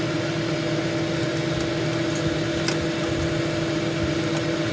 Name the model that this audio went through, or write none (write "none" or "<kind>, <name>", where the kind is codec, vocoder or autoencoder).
none